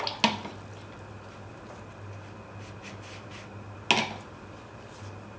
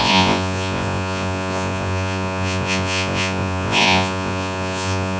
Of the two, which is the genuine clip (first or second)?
first